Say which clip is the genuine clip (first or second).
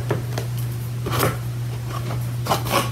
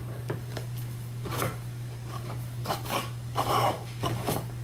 first